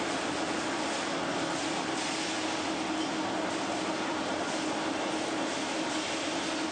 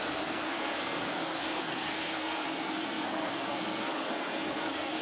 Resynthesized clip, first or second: second